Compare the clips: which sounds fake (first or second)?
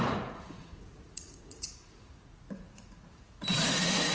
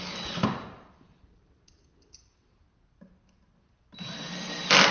first